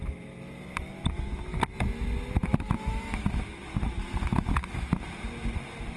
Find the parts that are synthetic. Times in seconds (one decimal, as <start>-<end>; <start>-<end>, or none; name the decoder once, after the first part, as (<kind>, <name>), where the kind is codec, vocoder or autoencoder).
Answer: 2.4-3.4 (autoencoder, DAC-VAE); 4.0-4.9